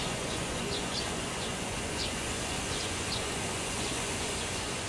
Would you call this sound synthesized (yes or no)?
yes